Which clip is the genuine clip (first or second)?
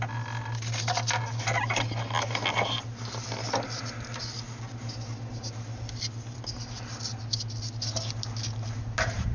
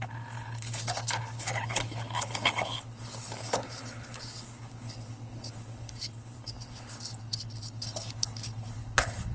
first